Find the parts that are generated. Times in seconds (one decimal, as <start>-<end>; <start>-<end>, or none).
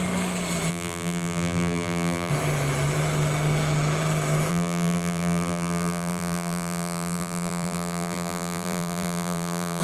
0.7-2.3; 4.5-9.8